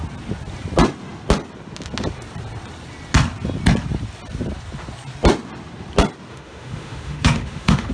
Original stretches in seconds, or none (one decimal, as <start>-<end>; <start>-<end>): 0.0-6.3